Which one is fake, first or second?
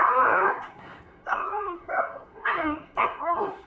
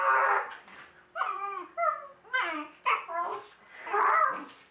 first